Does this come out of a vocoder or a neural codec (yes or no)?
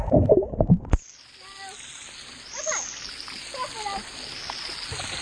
no